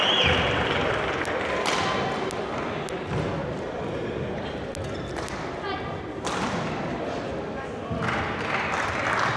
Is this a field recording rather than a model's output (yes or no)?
yes